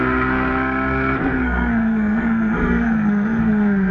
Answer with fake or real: fake